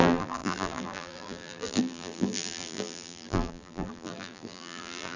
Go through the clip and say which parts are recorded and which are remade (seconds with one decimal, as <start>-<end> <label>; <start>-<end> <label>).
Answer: 0.0-5.2 remade